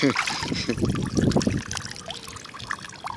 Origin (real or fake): real